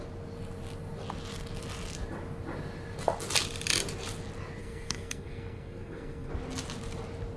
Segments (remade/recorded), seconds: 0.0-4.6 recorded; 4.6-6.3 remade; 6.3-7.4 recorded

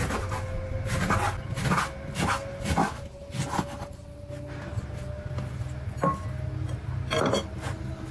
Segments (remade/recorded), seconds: 0.0-8.1 recorded

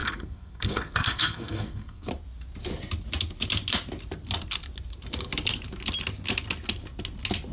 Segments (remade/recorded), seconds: 0.0-2.1 remade; 2.1-7.5 recorded